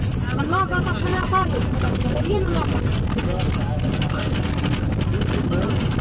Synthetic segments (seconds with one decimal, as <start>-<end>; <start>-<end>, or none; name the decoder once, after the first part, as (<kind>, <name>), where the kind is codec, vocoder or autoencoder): none